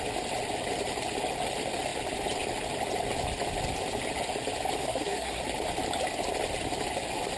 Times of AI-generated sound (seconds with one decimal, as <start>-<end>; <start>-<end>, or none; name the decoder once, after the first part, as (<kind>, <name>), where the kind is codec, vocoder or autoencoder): 4.8-5.4 (codec, SNAC)